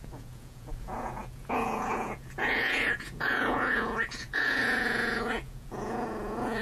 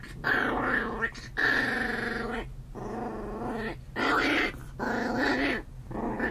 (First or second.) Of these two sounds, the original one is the second